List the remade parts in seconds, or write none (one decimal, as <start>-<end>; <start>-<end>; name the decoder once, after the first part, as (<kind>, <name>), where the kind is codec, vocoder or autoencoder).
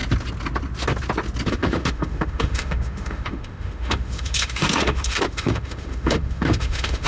1.5-7.1 (autoencoder, DAC-VAE)